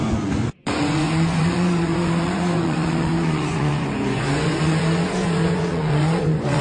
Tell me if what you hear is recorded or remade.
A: remade